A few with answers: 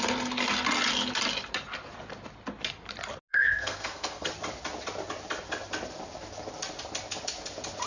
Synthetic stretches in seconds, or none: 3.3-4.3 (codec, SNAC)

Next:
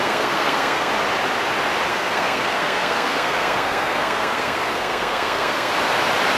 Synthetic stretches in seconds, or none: 0.0-0.9 (codec, SNAC); 1.9-5.7

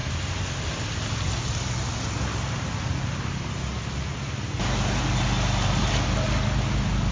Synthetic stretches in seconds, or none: none

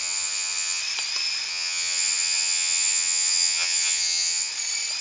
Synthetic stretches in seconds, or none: 0.0-0.8 (vocoder, HiFi-GAN); 1.5-4.5

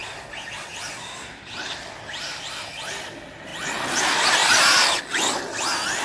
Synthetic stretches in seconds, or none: 0.7-2.7 (vocoder, BigVGAN v2); 4.4-5.0

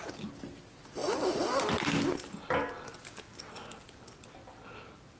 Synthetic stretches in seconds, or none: none

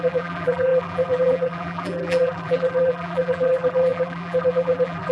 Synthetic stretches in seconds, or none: 0.0-5.1 (vocoder, BigVGAN v2)

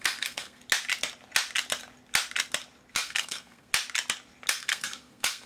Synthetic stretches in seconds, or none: 0.0-0.6 (codec, SNAC); 2.9-3.7; 4.5-5.5